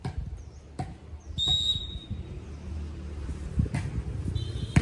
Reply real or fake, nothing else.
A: real